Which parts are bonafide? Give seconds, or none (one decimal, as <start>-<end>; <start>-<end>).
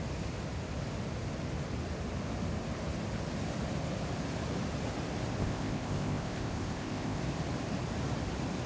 0.0-5.4; 7.2-8.7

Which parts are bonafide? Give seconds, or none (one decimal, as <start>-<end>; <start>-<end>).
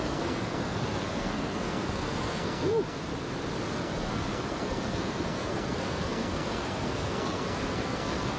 3.1-3.7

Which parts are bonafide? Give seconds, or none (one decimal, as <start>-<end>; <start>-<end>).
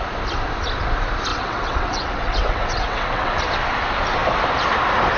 0.0-1.3; 3.4-5.2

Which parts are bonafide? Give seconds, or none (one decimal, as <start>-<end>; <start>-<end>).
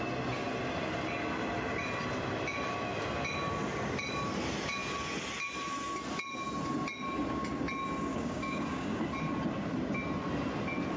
0.0-8.1; 9.0-11.0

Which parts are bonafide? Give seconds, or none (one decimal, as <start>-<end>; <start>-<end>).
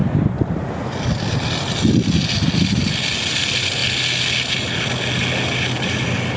0.0-6.4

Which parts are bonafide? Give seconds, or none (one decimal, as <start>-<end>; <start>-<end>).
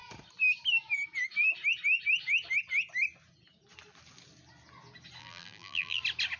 0.0-5.2; 6.0-6.4